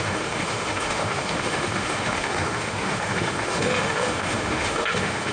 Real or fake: fake